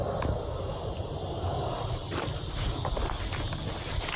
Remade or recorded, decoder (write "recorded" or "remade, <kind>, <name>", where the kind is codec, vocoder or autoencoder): recorded